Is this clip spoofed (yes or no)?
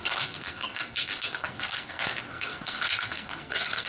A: yes